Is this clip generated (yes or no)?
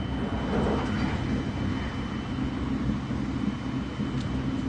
no